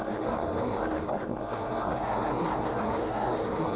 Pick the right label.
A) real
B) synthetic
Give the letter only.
B